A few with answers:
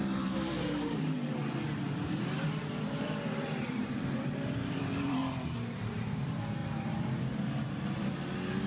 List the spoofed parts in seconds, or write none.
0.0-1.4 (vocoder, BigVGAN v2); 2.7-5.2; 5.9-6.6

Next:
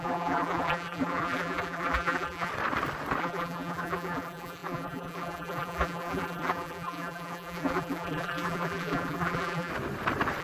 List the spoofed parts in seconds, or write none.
0.0-2.5 (vocoder, BigVGAN v2); 3.2-9.7